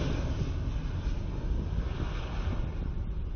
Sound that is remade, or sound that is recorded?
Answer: recorded